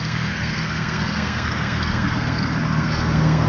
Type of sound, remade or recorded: remade